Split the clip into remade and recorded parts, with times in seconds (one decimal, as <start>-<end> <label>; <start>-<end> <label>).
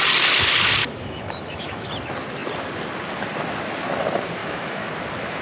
0.0-0.8 recorded; 0.8-1.9 remade; 1.9-4.4 recorded; 4.4-4.9 remade; 4.9-5.4 recorded